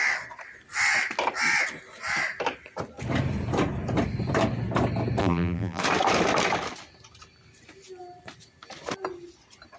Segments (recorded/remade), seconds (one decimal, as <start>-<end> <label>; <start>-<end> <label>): 0.0-5.2 recorded; 5.2-5.8 remade; 5.8-9.8 recorded